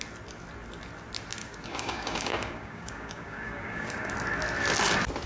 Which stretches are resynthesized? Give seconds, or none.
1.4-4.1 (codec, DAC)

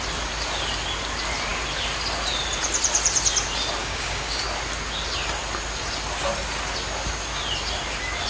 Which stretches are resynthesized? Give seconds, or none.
3.8-4.4 (codec, DAC)

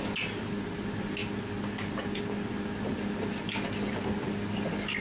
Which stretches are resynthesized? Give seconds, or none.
none

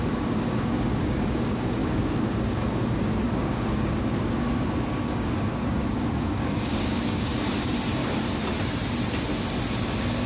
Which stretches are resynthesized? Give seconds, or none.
0.0-7.3 (codec, DAC)

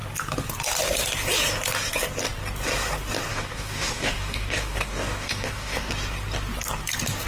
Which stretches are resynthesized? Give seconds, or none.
3.3-5.9 (codec, DAC)